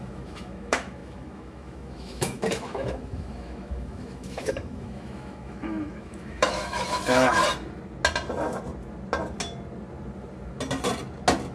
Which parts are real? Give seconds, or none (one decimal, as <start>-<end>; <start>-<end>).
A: 7.4-11.5